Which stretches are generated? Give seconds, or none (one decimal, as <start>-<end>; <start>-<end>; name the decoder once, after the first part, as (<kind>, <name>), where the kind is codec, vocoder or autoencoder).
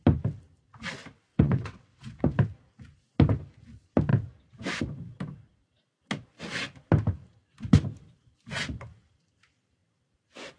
1.3-2.2 (vocoder, WaveNeXt)